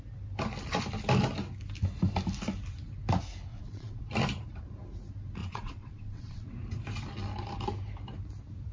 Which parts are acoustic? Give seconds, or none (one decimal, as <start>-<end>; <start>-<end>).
0.0-3.5; 4.0-5.4; 6.5-8.7